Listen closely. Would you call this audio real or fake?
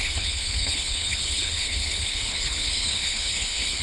fake